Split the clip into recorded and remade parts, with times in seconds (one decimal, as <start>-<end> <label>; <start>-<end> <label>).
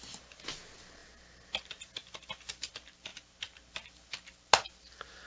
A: 0.0-5.3 recorded